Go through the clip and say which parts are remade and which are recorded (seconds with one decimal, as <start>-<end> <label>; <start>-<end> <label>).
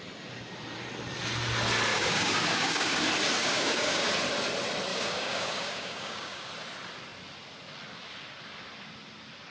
0.0-1.9 recorded; 1.9-3.0 remade; 3.0-3.4 recorded; 3.4-4.1 remade; 4.1-4.9 recorded; 4.9-6.5 remade; 6.5-9.5 recorded